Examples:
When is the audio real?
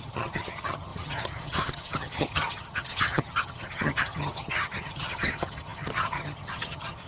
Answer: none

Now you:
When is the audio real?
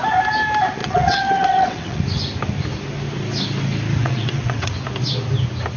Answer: 0.0-0.8; 2.0-4.0; 4.7-5.8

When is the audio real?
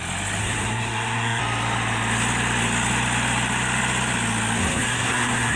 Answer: 0.0-0.4; 1.4-4.6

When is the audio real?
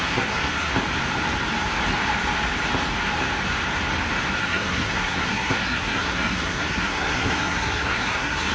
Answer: 0.7-4.4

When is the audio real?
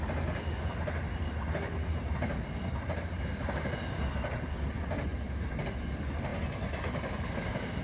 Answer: 0.0-5.1; 5.7-7.8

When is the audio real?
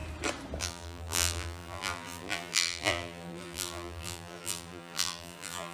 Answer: 0.0-0.6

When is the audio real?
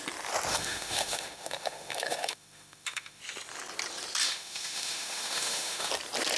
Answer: 0.0-0.5; 3.2-4.2; 5.9-6.4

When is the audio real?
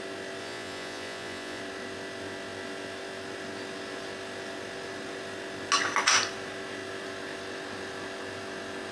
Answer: 0.0-0.4; 1.6-8.9